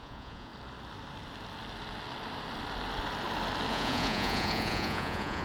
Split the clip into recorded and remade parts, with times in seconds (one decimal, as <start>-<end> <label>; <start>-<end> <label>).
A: 0.0-0.5 remade; 0.5-3.7 recorded; 3.7-5.4 remade

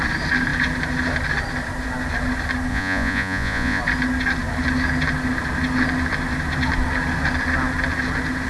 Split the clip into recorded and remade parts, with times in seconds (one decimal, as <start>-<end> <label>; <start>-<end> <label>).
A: 0.0-2.7 recorded; 2.7-3.8 remade; 3.8-8.5 recorded

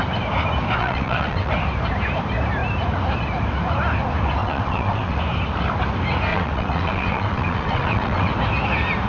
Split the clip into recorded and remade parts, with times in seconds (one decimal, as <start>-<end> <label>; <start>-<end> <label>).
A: 0.0-0.8 recorded; 0.8-1.5 remade; 1.5-4.4 recorded; 4.4-5.2 remade; 5.2-6.3 recorded; 6.3-8.3 remade; 8.3-9.1 recorded

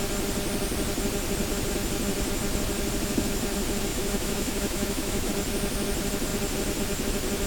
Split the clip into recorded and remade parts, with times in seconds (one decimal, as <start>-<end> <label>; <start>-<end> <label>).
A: 0.0-3.9 recorded; 3.9-5.3 remade; 5.3-7.5 recorded

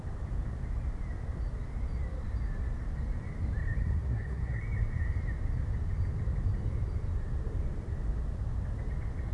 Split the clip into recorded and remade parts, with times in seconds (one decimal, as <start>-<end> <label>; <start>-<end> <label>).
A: 0.0-3.8 recorded; 3.8-4.6 remade; 4.6-9.3 recorded

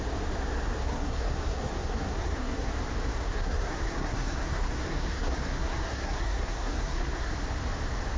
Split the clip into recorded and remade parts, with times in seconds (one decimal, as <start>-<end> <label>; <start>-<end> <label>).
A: 0.0-0.8 recorded; 0.8-2.7 remade; 2.7-3.1 recorded; 3.1-7.3 remade; 7.3-8.2 recorded

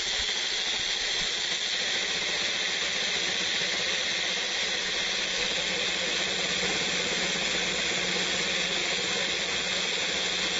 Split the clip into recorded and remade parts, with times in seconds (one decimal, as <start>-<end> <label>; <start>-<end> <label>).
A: 0.0-10.6 recorded